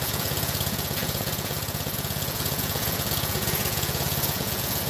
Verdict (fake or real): fake